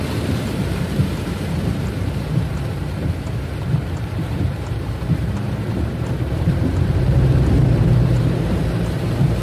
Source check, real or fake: fake